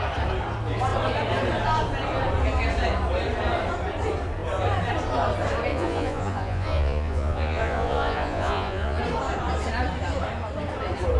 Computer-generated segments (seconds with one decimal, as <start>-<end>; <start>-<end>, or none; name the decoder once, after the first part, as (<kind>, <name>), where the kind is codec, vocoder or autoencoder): 5.7-9.0 (vocoder, Vocos)